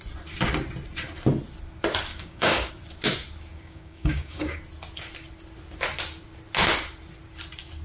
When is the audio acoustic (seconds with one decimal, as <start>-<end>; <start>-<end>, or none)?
0.0-2.1; 2.7-3.5; 4.6-7.8